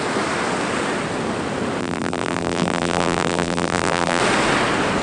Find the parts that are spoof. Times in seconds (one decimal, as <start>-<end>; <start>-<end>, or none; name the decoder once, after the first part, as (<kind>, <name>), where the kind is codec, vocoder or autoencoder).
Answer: 1.8-4.2 (vocoder, BigVGAN v2)

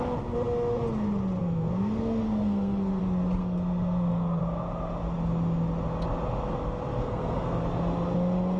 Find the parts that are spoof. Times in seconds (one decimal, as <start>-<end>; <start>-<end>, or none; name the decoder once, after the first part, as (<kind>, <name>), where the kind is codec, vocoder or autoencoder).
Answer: 1.4-3.0 (codec, SNAC); 3.4-4.4; 7.0-7.6